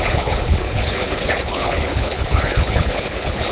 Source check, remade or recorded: remade